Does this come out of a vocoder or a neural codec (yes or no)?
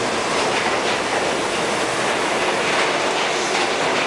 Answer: no